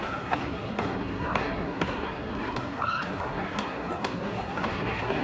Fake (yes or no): yes